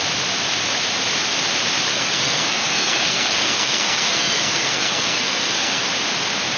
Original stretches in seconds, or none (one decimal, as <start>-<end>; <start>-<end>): 0.0-1.9; 5.9-6.6